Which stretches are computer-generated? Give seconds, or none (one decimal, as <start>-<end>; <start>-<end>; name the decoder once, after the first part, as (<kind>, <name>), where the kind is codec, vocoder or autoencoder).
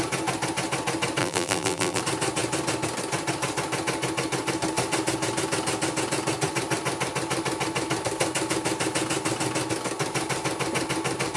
1.2-2.0 (vocoder, BigVGAN v2)